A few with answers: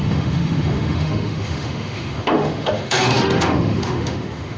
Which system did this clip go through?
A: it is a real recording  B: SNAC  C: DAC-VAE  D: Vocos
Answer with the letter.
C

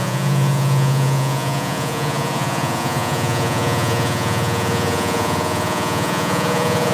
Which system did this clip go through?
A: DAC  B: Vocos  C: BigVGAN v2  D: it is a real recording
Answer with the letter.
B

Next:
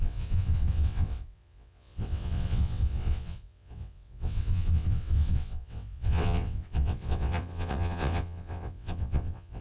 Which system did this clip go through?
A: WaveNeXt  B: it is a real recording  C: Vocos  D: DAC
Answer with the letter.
A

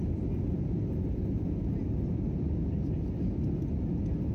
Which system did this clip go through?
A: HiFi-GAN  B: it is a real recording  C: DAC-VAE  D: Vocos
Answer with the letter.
B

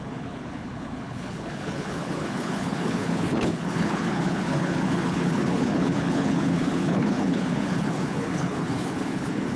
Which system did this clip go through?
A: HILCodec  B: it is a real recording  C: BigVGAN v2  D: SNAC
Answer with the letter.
A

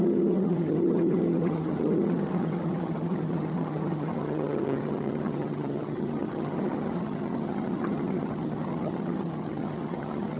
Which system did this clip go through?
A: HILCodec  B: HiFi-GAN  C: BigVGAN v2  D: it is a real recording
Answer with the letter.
B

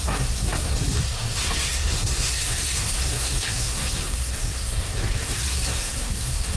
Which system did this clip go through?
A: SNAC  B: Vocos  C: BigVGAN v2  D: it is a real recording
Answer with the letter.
A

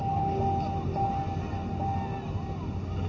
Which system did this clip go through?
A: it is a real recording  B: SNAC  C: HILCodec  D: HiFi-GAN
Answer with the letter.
A